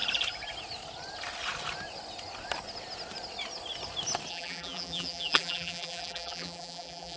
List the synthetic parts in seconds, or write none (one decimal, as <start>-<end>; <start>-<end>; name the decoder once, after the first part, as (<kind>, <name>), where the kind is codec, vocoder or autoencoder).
4.3-7.2 (vocoder, BigVGAN v2)